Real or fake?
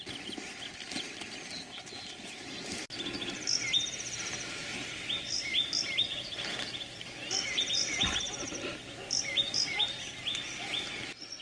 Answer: real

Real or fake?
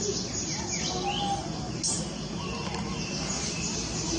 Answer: real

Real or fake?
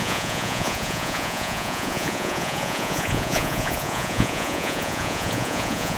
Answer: fake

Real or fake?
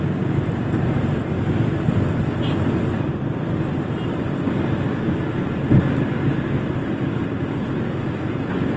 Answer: real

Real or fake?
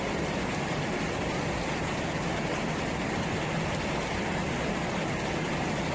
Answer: real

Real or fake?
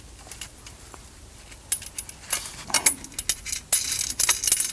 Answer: real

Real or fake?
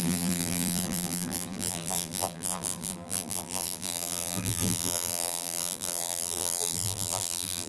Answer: fake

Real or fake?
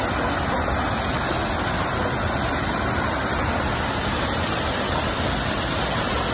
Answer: real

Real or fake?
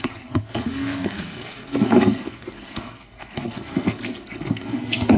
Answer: fake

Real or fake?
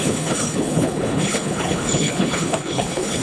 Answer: fake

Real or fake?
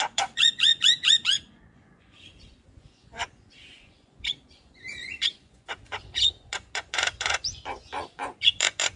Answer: fake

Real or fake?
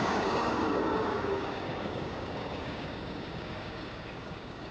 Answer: fake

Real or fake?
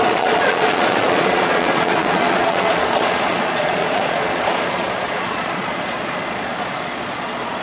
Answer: fake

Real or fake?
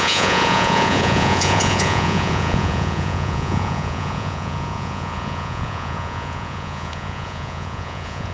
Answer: fake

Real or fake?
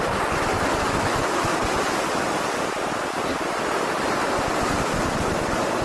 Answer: real